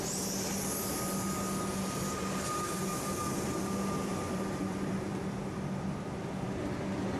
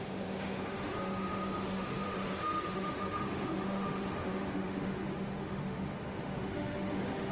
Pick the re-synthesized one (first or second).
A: second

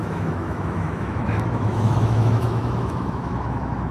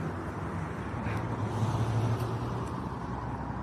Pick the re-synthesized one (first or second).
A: first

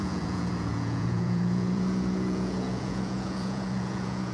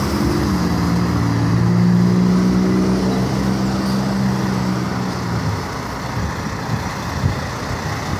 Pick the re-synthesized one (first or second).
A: first